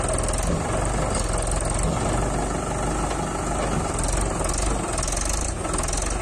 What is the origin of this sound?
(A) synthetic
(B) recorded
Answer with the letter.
B